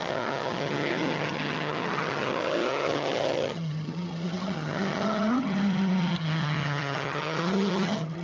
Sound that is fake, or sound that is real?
fake